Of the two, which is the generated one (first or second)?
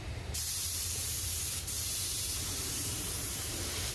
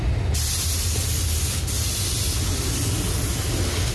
first